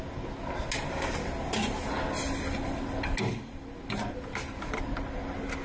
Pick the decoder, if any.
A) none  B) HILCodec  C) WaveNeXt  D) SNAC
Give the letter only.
A